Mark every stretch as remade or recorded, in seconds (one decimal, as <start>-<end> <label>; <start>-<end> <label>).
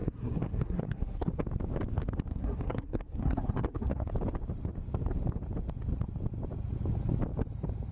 0.0-1.3 remade; 1.3-2.3 recorded; 2.3-4.1 remade; 4.1-7.9 recorded